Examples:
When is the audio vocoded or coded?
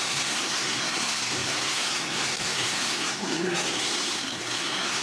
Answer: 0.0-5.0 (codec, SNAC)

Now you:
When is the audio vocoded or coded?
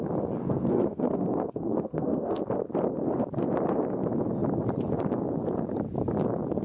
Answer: 0.4-2.4 (codec, SNAC)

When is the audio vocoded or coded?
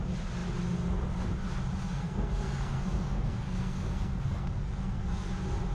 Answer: 1.9-5.3 (codec, SNAC)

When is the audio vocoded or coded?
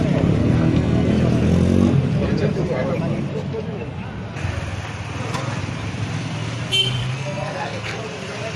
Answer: 0.4-1.1 (codec, SNAC); 7.0-8.0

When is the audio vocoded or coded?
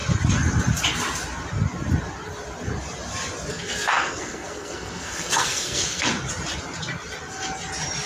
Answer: 3.5-6.1 (codec, SNAC)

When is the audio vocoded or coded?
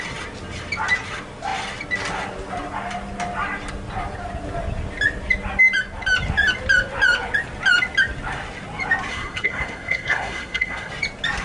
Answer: 9.1-10.9 (codec, SNAC)